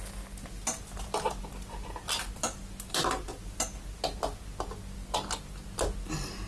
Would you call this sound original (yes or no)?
yes